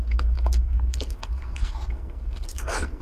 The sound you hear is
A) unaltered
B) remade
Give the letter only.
B